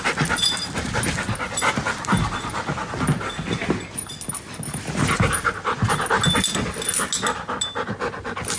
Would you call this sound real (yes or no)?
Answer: yes